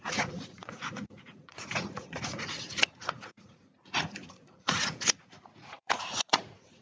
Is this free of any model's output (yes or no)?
no